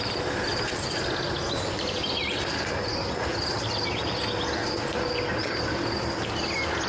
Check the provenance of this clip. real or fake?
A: real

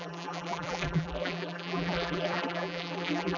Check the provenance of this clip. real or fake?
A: fake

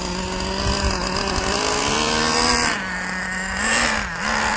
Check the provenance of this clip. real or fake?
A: real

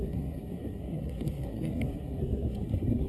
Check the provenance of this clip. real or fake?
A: fake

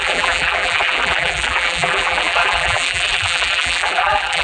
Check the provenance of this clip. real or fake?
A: fake